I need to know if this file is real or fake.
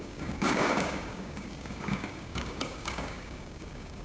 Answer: fake